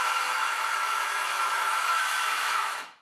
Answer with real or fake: fake